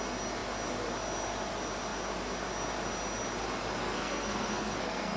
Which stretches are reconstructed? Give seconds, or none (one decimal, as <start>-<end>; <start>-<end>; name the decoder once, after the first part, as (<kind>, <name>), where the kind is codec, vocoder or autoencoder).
3.8-5.2 (codec, SNAC)